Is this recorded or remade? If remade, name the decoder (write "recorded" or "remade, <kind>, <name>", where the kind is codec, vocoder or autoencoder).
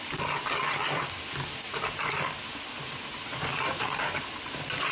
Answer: recorded